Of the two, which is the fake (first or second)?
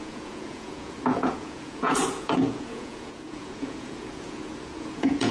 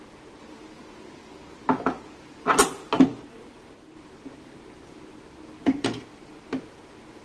first